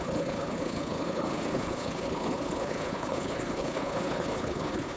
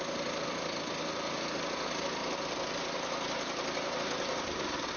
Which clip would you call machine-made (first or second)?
first